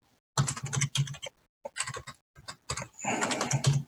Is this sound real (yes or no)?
yes